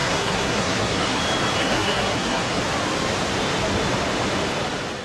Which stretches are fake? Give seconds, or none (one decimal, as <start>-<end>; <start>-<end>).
0.0-1.2; 1.6-2.6